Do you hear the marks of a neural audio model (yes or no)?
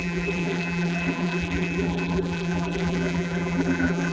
yes